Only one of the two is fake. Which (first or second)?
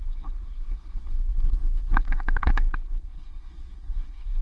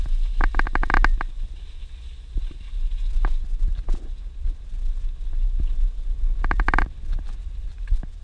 first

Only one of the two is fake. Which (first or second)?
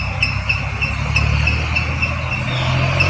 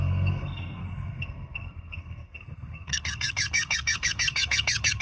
second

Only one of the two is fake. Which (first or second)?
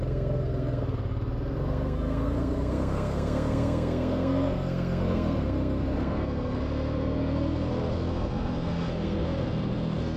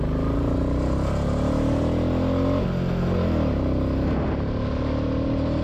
first